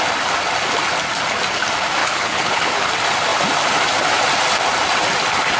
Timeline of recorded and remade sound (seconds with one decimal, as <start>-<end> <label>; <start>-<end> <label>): 0.0-2.0 recorded; 2.0-2.9 remade; 2.9-5.6 recorded